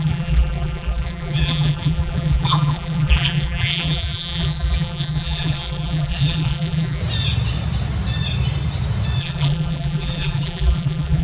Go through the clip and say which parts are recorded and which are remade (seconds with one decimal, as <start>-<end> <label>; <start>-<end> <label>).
0.0-7.0 remade; 7.0-9.2 recorded; 9.2-11.2 remade